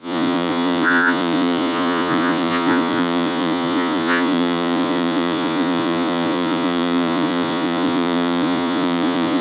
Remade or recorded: remade